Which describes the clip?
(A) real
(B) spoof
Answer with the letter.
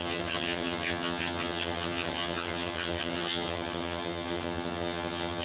B